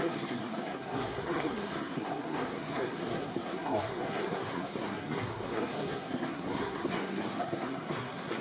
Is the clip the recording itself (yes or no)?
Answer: no